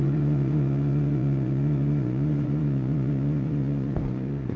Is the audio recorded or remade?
remade